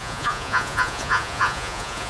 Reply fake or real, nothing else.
fake